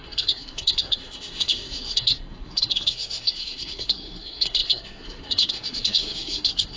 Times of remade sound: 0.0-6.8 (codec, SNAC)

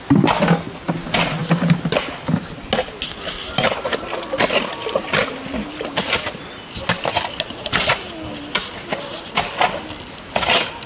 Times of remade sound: none

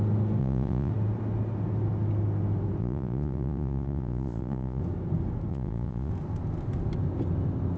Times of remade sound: 0.4-0.9 (vocoder, Vocos); 2.8-4.8; 5.5-6.1

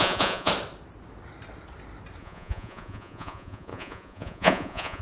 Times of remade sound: 0.0-0.5 (vocoder, Vocos); 2.2-5.0

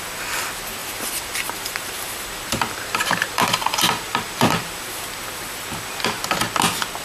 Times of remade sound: 0.8-5.0 (vocoder, BigVGAN v2)

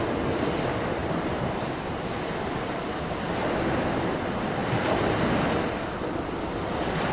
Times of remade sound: 1.0-1.8 (vocoder, BigVGAN v2)